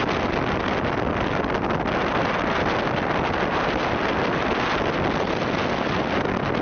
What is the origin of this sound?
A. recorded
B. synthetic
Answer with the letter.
A